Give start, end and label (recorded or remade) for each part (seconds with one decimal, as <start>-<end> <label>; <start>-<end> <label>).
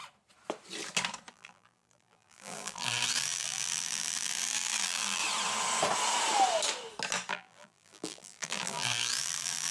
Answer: 0.0-1.3 recorded; 1.3-5.2 remade; 5.2-7.3 recorded; 7.3-9.7 remade